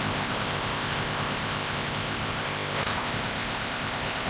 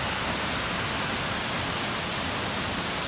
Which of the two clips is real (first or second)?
second